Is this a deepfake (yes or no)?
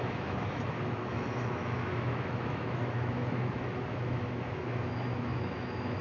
yes